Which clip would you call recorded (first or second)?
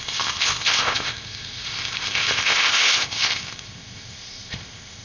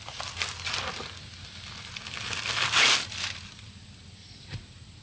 second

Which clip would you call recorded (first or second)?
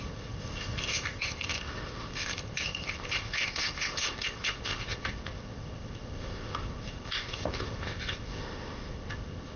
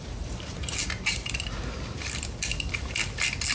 second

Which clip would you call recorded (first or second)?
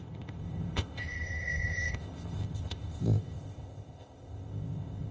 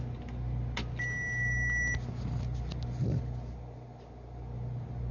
second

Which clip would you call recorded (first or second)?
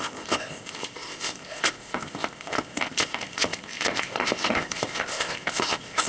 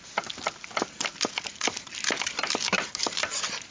second